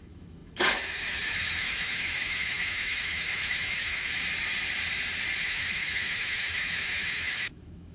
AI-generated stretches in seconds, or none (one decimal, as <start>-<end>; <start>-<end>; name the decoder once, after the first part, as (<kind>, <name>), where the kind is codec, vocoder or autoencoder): 0.0-4.1 (autoencoder, DAC-VAE); 5.4-7.9